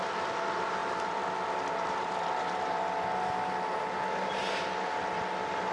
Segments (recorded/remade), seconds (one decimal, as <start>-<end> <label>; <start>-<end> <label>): 0.0-5.7 recorded